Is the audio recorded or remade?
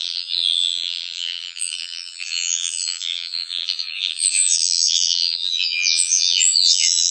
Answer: remade